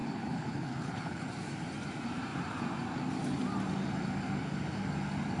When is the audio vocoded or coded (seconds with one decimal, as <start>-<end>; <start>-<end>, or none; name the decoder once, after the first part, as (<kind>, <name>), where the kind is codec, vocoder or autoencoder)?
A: 0.0-1.2 (codec, HILCodec)